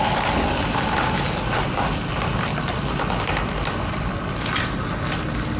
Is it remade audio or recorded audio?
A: recorded